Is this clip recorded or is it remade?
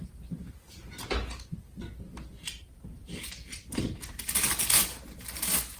recorded